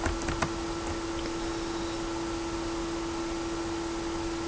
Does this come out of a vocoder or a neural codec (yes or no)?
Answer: no